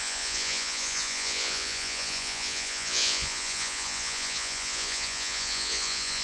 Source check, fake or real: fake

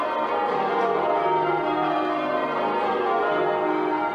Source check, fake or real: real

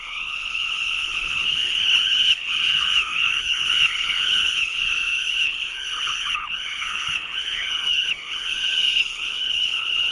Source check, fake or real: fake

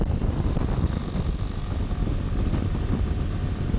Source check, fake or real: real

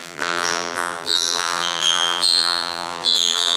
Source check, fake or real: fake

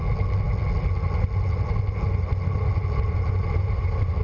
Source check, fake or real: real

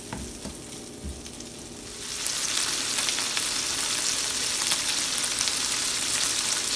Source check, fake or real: real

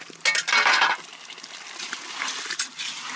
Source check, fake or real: real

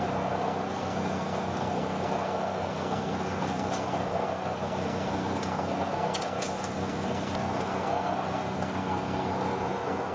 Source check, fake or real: fake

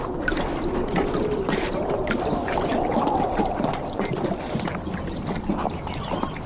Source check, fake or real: real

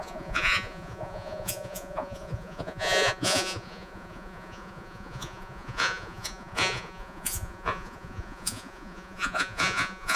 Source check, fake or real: fake